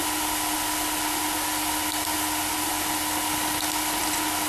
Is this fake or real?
real